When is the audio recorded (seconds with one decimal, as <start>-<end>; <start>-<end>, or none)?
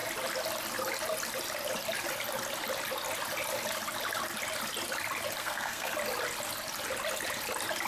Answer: 0.0-5.4; 5.9-7.9